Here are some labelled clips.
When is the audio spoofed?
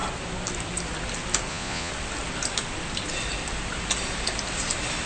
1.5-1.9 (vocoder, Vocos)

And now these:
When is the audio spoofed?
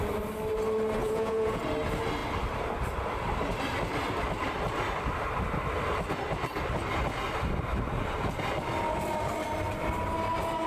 1.0-1.6 (vocoder, Vocos)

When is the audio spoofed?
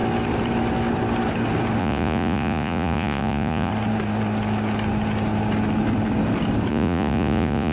1.8-3.7 (vocoder, Vocos); 6.7-7.7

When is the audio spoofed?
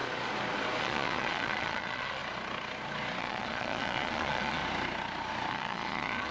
0.8-2.2 (vocoder, Vocos); 3.2-4.6; 5.5-6.3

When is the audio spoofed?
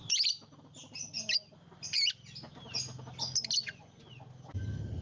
3.6-4.3 (vocoder, Vocos)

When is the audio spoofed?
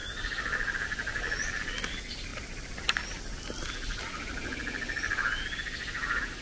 none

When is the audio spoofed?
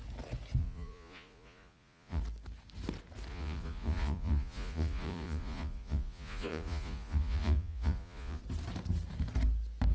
0.6-2.2 (vocoder, Vocos); 3.3-8.4